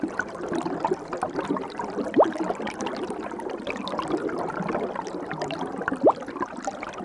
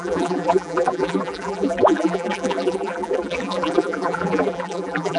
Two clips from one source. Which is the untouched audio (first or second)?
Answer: first